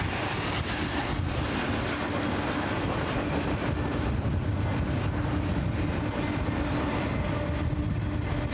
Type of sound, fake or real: real